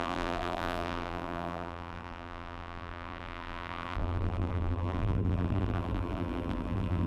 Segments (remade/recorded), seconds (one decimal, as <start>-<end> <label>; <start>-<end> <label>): 0.0-7.1 remade